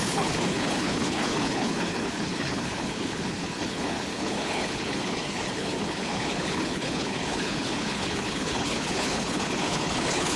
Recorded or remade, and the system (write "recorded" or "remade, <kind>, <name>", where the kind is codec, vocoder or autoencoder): remade, codec, HILCodec